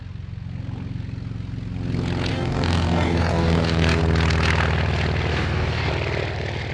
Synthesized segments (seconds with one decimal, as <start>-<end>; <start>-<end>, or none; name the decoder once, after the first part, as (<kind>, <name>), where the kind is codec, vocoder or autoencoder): 2.3-4.0 (codec, DAC); 5.3-5.9